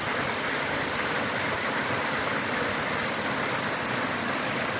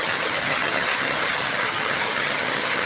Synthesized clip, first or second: second